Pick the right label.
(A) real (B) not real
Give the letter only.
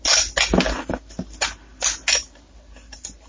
A